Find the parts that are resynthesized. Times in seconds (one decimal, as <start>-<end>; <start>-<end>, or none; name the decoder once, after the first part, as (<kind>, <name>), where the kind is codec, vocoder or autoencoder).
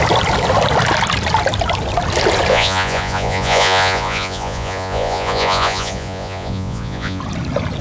2.5-7.2 (vocoder, Vocos)